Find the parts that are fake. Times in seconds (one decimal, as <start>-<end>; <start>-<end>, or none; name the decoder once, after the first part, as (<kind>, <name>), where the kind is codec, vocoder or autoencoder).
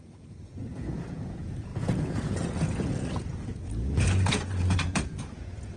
0.0-5.8 (vocoder, Vocos)